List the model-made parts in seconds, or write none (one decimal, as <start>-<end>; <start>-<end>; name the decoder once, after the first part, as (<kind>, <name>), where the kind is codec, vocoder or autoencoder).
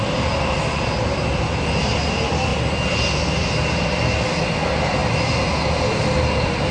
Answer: none